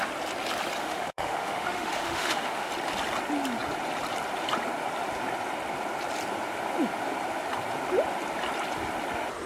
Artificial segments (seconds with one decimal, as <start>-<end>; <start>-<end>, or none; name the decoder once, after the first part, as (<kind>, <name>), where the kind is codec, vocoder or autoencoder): 0.8-2.7 (autoencoder, DAC-VAE)

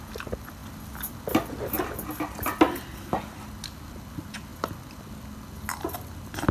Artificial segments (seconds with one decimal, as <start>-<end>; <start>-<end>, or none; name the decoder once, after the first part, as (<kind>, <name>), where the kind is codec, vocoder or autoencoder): none

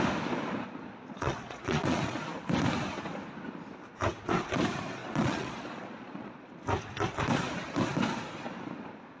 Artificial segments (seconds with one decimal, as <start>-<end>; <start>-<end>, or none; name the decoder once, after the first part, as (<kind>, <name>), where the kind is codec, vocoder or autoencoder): 1.1-2.2 (vocoder, Vocos); 5.0-6.5

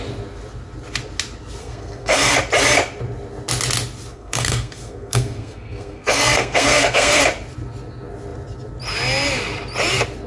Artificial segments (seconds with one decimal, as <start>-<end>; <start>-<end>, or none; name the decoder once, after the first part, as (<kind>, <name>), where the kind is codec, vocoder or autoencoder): 1.6-2.3 (codec, SNAC); 4.1-7.2